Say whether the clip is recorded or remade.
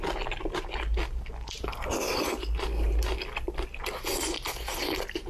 recorded